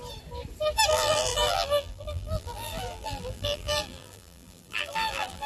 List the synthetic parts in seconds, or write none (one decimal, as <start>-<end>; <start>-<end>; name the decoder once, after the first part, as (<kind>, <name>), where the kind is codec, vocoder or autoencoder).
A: 0.9-5.5 (vocoder, BigVGAN v2)